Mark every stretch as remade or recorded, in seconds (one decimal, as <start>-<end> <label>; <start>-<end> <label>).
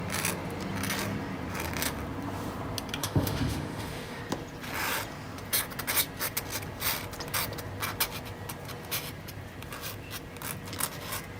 0.0-3.0 recorded; 3.0-4.2 remade; 4.2-11.4 recorded